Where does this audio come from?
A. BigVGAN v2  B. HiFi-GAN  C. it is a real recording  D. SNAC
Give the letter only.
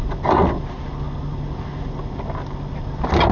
C